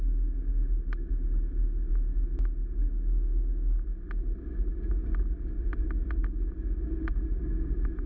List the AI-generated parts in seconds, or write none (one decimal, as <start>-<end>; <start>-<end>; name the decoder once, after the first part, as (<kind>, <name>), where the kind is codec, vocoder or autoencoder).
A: none